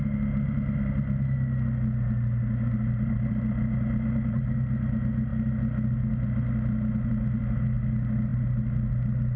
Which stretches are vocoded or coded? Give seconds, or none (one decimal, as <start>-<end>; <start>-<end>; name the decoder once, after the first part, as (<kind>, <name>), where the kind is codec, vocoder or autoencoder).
5.3-6.1 (vocoder, BigVGAN v2); 8.3-9.4